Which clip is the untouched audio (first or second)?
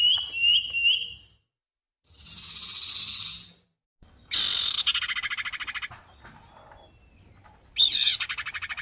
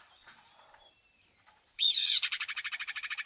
first